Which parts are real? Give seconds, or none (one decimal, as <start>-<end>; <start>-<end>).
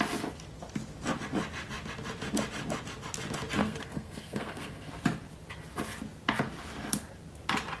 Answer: 0.0-3.6; 4.9-7.8